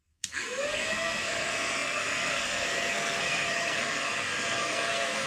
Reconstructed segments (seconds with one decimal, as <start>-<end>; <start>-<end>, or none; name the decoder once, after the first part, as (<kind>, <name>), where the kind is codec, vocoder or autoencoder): 0.0-5.3 (codec, SNAC)